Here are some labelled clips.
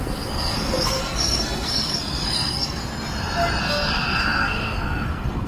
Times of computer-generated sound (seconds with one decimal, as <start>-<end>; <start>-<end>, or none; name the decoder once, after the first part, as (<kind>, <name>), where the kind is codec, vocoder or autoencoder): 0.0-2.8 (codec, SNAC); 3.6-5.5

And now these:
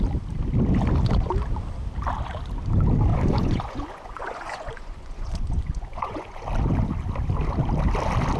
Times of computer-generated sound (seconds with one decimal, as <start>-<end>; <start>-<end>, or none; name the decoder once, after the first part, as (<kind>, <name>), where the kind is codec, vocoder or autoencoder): 3.1-6.4 (vocoder, Vocos)

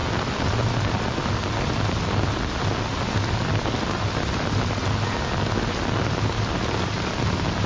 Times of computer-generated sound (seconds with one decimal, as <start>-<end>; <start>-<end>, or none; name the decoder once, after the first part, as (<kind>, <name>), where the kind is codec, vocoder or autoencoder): none

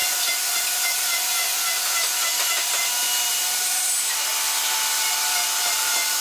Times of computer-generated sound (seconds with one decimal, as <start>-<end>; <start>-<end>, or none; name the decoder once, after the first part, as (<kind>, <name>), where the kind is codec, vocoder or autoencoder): 0.0-1.3 (vocoder, BigVGAN v2); 3.3-4.3

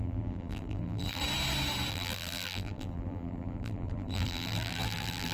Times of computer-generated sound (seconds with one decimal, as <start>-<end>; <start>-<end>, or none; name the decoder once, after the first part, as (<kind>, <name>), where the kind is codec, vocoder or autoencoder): 0.0-1.2 (vocoder, BigVGAN v2); 1.9-5.3

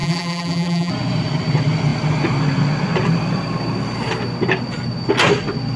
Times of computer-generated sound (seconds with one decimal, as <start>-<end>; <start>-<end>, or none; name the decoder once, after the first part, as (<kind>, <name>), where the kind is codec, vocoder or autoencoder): 0.0-0.9 (vocoder, BigVGAN v2)